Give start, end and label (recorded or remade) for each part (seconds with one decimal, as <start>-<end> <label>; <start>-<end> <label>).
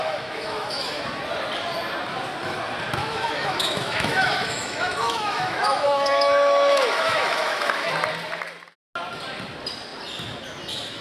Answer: 0.0-1.0 remade; 1.0-3.0 recorded; 3.0-7.9 remade; 7.9-11.0 recorded